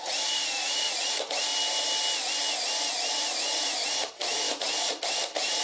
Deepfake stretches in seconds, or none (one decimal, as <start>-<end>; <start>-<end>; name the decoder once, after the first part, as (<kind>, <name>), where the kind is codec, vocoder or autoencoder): 0.0-1.5 (vocoder, Vocos); 3.1-5.6